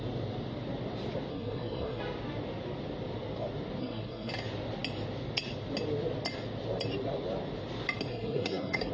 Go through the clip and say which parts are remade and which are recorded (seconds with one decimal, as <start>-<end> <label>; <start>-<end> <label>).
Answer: 0.0-1.3 recorded; 1.3-2.0 remade; 2.0-3.8 recorded; 3.8-4.3 remade; 4.3-8.1 recorded; 8.1-8.9 remade